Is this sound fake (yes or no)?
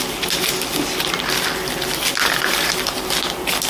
no